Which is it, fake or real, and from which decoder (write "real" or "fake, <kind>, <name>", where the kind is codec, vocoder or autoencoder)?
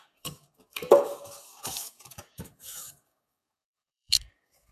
fake, codec, DAC